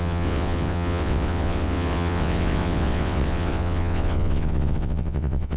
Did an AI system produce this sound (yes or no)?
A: yes